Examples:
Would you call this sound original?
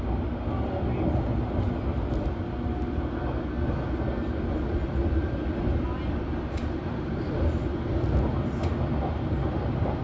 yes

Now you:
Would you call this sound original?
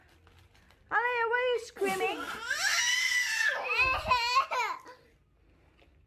yes